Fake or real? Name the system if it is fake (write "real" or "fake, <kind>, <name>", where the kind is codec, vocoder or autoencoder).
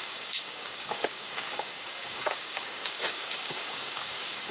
fake, codec, DAC